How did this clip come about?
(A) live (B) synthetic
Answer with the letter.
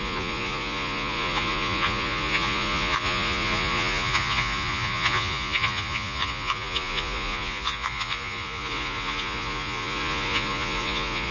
B